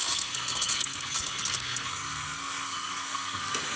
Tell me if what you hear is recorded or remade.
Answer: remade